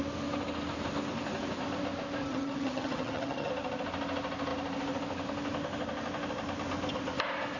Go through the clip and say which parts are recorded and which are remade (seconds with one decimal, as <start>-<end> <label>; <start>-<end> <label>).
0.0-2.2 recorded; 2.2-3.5 remade; 3.5-7.6 recorded